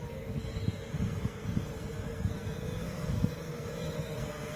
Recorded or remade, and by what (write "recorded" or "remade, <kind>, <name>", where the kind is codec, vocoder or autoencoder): remade, codec, SNAC